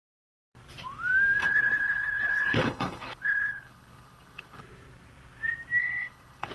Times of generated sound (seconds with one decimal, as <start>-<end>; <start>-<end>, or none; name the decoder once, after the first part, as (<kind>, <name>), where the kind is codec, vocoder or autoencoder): 1.4-4.6 (codec, HILCodec); 5.8-6.5